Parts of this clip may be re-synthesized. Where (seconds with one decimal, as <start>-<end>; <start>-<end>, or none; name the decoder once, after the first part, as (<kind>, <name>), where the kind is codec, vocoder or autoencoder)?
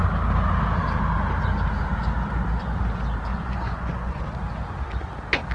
3.3-4.2 (vocoder, Vocos)